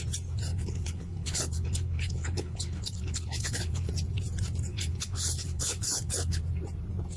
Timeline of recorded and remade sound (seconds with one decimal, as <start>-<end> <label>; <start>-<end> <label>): 0.0-0.5 recorded; 0.5-3.9 remade; 3.9-4.7 recorded; 4.7-6.4 remade; 6.4-7.2 recorded